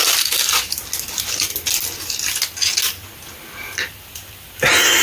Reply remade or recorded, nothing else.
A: recorded